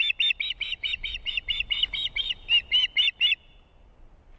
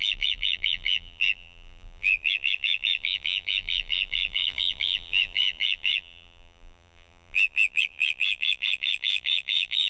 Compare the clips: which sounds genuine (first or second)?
first